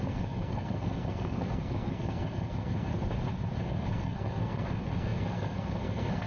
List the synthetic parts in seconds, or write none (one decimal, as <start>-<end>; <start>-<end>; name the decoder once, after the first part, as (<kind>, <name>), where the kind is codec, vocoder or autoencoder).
0.0-2.9 (codec, SNAC); 3.6-6.3